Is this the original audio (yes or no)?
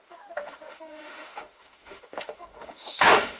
no